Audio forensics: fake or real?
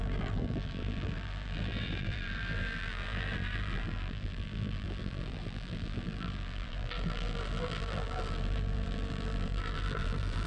fake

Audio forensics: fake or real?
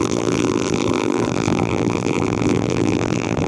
fake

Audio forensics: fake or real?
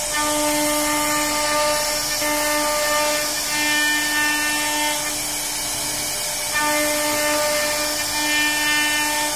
real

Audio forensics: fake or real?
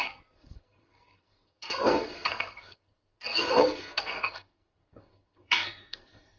fake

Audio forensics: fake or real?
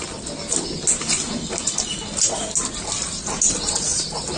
real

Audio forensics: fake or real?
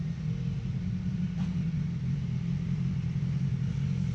real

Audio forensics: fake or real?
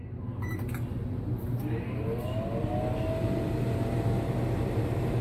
fake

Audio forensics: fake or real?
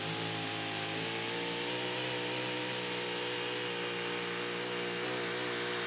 real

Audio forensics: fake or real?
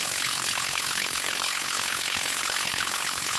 fake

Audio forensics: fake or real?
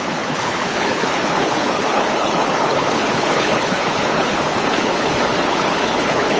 fake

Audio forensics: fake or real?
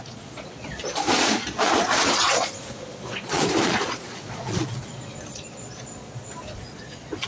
fake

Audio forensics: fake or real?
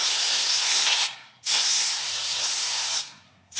fake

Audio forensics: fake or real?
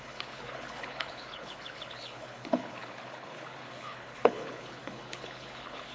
fake